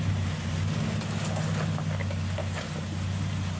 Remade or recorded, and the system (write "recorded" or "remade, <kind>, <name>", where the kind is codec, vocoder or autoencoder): recorded